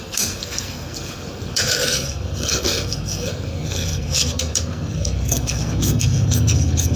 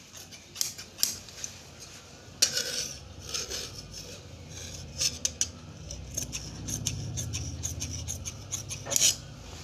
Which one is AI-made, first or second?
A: first